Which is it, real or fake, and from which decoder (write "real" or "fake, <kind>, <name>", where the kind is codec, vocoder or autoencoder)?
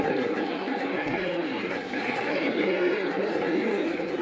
fake, codec, SNAC